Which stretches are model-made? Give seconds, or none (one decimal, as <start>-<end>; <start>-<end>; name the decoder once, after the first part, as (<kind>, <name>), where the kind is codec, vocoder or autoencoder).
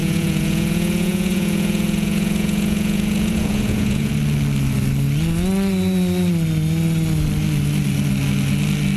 0.0-4.1 (vocoder, Vocos)